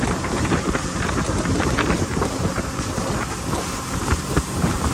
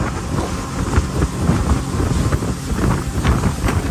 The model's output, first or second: first